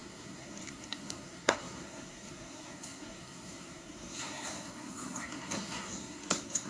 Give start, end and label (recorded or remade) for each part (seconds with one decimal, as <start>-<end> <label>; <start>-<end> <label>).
0.0-6.7 remade